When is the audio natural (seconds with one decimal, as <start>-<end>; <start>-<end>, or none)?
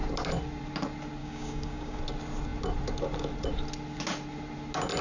0.0-1.2; 2.0-5.0